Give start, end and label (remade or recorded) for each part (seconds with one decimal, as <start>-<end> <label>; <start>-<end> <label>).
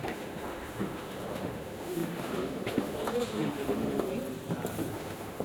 0.0-4.1 remade; 4.1-4.9 recorded; 4.9-5.4 remade